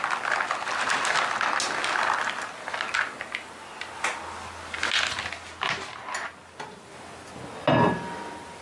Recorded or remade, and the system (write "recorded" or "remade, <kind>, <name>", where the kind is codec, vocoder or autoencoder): recorded